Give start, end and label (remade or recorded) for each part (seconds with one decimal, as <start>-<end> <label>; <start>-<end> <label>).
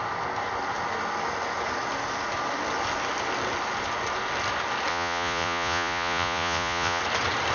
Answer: 0.0-4.9 recorded; 4.9-7.0 remade; 7.0-7.5 recorded